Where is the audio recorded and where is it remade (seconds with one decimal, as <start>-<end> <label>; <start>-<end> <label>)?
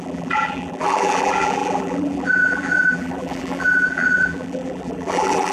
0.0-5.5 remade